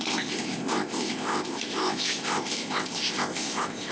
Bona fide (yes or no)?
no